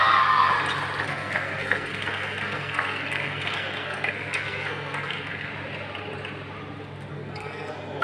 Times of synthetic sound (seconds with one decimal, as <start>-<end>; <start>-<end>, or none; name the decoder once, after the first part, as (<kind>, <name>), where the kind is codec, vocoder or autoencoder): 0.0-0.5 (codec, SNAC); 1.0-5.5; 7.1-8.0